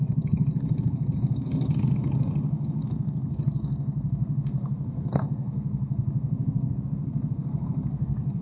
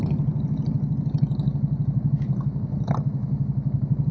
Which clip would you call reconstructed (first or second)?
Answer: first